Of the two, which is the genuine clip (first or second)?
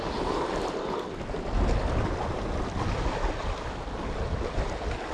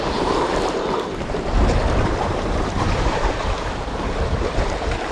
first